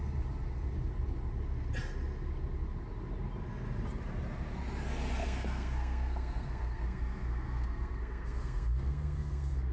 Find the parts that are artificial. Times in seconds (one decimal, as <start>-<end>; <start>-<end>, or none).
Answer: 5.2-9.7